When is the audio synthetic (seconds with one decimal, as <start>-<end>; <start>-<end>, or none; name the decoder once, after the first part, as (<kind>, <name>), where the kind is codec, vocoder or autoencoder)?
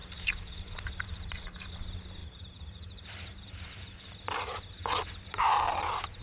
0.0-1.7 (vocoder, BigVGAN v2); 2.2-4.1